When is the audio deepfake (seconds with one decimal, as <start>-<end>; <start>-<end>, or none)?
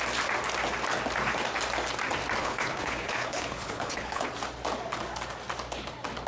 2.4-4.3